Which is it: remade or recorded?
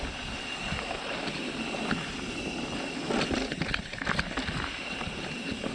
recorded